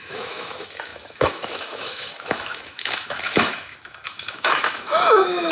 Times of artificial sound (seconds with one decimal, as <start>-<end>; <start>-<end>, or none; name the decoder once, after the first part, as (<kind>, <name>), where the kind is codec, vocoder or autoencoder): 0.0-5.5 (autoencoder, DAC-VAE)